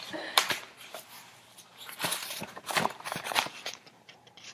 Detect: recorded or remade remade